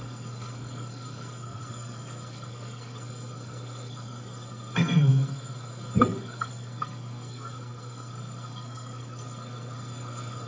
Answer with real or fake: fake